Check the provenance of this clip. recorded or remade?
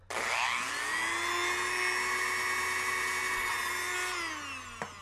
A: recorded